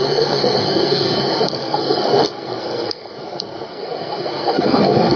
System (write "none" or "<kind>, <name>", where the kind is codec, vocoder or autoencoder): codec, SNAC